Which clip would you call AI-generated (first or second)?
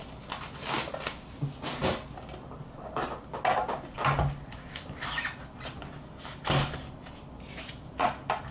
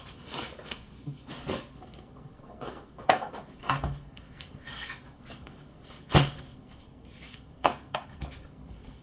second